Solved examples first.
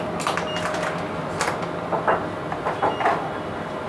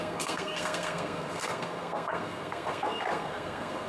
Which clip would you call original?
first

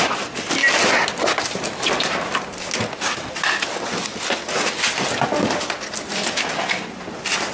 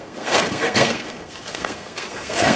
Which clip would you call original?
first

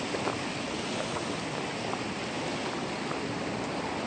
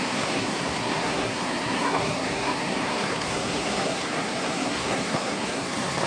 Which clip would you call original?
first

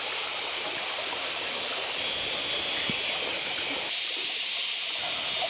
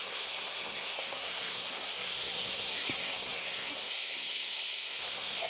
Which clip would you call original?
first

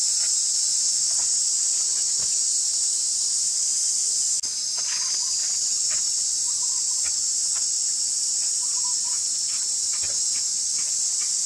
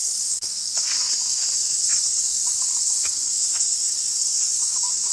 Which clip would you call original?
first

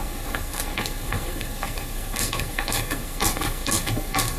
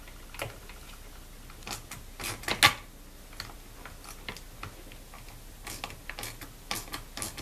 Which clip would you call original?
second